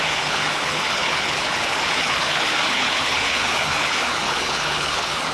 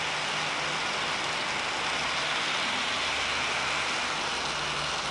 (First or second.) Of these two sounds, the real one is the second